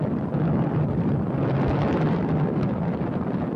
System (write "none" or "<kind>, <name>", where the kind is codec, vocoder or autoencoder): none